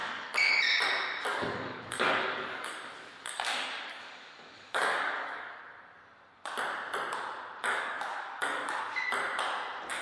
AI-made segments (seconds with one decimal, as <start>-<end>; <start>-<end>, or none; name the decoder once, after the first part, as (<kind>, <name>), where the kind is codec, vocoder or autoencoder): 0.0-0.5 (codec, DAC); 1.3-2.7; 3.2-5.6; 7.7-8.8